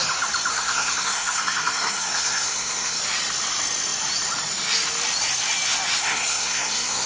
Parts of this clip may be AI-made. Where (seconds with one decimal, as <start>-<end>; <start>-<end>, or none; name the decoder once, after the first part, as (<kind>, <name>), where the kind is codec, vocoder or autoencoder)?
0.5-3.0 (codec, SNAC); 6.0-7.1